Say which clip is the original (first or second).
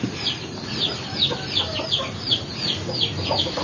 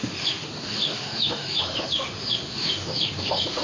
first